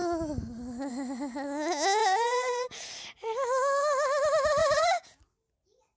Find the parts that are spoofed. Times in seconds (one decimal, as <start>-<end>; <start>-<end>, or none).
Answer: 2.0-2.9; 4.6-5.2